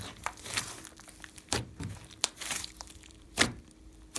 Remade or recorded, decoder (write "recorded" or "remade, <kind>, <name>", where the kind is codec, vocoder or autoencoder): remade, vocoder, BigVGAN v2